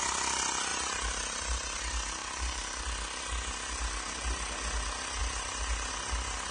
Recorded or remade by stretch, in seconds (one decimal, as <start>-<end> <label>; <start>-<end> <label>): 0.0-0.7 recorded; 0.7-1.8 remade; 1.8-2.2 recorded; 2.2-2.8 remade; 2.8-5.2 recorded; 5.2-5.9 remade; 5.9-6.5 recorded

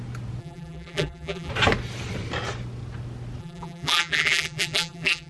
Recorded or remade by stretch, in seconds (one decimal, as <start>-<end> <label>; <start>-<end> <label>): 0.0-0.4 recorded; 0.4-1.5 remade; 1.5-3.4 recorded; 3.4-5.3 remade